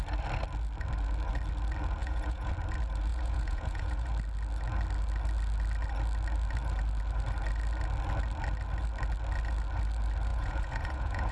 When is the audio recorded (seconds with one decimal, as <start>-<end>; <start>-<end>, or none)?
0.0-2.0; 2.5-3.1; 4.1-10.3